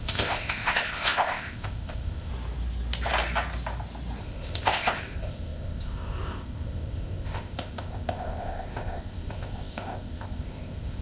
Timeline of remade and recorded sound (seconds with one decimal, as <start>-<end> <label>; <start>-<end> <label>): 0.0-2.3 remade; 2.3-4.2 recorded; 4.2-11.0 remade